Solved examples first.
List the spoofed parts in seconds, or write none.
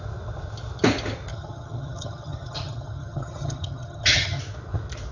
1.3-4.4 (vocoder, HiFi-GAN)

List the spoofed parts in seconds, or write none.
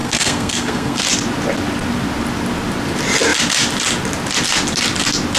0.0-1.0 (codec, SNAC)